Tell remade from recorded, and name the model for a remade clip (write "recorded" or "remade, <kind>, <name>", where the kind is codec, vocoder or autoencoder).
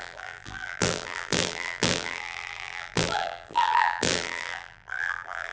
remade, vocoder, BigVGAN v2